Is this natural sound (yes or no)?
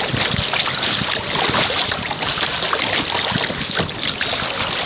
yes